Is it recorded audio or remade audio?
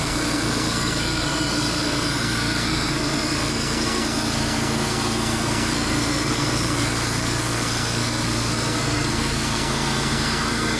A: remade